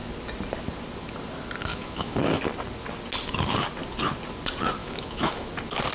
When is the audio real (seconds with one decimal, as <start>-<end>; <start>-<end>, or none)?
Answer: 0.0-1.7; 2.4-4.8; 5.5-5.9